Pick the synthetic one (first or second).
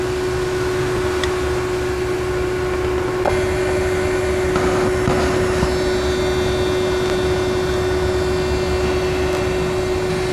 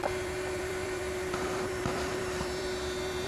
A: second